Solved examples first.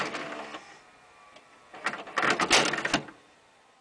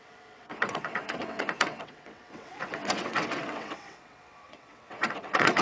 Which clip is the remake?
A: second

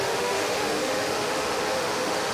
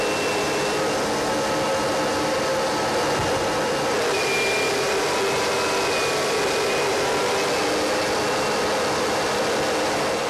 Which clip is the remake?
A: first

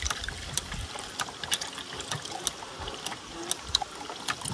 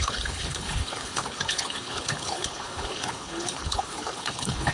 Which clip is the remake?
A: second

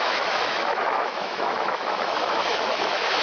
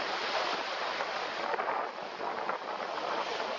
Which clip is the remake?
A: first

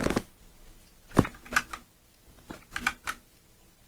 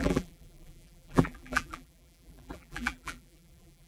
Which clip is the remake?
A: second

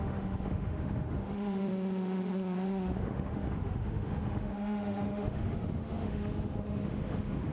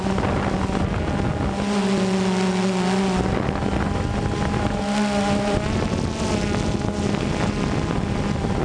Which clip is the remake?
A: first